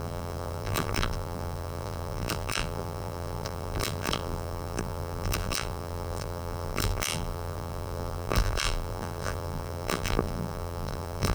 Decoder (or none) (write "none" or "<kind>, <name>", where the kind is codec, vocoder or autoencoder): vocoder, BigVGAN v2